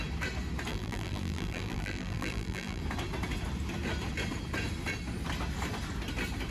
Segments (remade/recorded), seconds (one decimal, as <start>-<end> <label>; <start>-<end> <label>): 0.0-0.7 recorded; 0.7-2.8 remade; 2.8-6.5 recorded